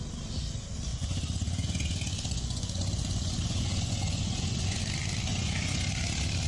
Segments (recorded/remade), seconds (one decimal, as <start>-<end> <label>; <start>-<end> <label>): 0.0-0.9 recorded; 0.9-4.8 remade; 4.8-5.3 recorded; 5.3-5.9 remade; 5.9-6.5 recorded